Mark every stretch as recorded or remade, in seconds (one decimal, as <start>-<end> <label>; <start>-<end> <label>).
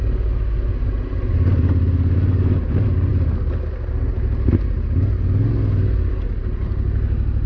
0.0-7.5 recorded